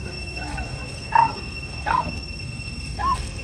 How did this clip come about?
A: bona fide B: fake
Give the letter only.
B